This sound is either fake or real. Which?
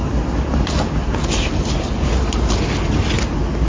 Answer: real